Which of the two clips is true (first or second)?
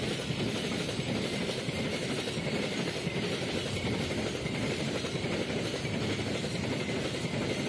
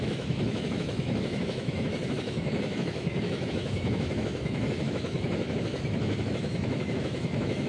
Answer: first